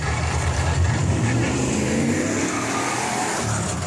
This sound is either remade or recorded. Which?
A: remade